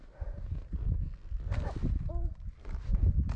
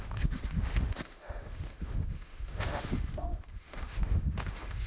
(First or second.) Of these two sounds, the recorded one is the first